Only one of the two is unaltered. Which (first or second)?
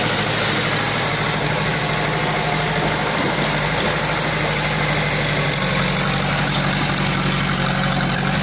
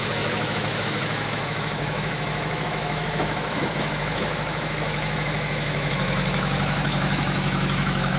first